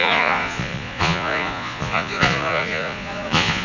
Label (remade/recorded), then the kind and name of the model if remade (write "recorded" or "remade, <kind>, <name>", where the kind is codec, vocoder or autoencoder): remade, vocoder, Vocos